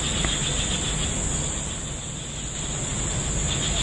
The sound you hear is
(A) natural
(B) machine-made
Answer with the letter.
A